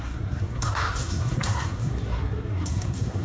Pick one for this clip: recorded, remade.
remade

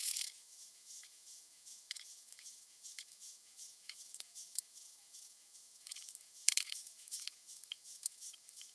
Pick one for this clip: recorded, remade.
remade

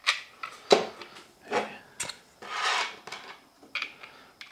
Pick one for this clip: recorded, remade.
recorded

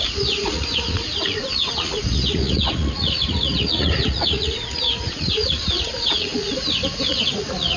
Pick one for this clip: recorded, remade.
remade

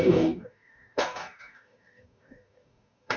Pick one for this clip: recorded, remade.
remade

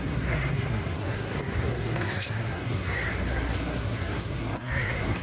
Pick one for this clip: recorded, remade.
remade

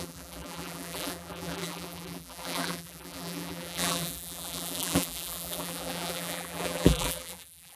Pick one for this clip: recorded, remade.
remade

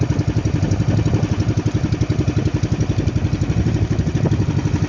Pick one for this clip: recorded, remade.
recorded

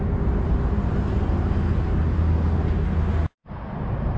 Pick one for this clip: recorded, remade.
recorded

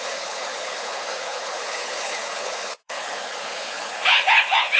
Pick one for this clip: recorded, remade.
remade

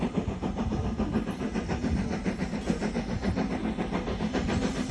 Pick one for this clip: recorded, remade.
remade